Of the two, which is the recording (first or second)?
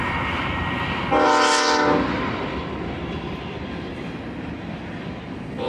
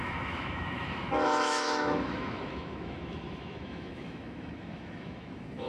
first